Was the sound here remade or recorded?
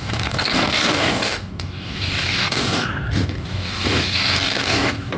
remade